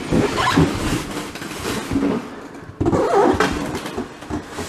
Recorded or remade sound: recorded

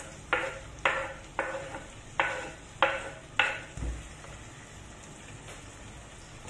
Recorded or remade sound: recorded